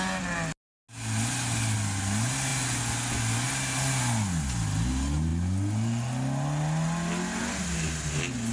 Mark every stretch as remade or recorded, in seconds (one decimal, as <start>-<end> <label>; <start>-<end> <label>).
0.0-8.5 recorded